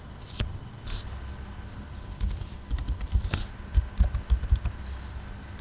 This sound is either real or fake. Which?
real